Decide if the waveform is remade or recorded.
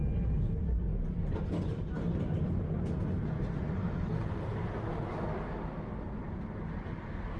recorded